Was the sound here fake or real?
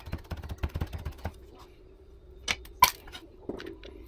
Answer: real